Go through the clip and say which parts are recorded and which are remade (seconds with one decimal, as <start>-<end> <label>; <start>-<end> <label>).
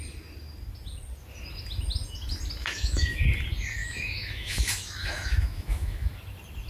0.0-2.6 recorded; 2.6-3.2 remade; 3.2-3.8 recorded; 3.8-6.1 remade; 6.1-6.7 recorded